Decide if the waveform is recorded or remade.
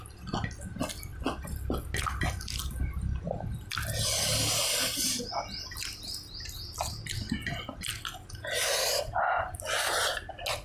recorded